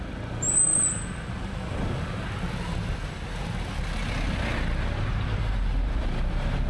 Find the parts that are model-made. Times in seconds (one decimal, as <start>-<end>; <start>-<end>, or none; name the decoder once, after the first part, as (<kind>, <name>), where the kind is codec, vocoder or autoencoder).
0.7-1.8 (vocoder, BigVGAN v2)